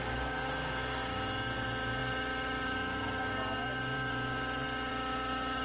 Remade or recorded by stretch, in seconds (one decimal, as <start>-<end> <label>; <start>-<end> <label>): 0.0-5.6 recorded